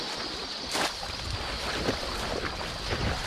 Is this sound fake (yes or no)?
yes